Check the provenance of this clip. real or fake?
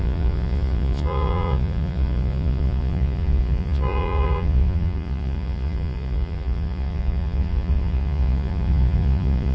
fake